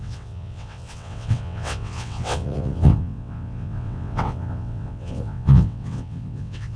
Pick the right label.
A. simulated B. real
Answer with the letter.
A